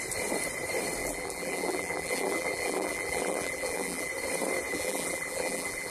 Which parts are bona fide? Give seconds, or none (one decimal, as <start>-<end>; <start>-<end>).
0.0-1.0; 4.1-4.7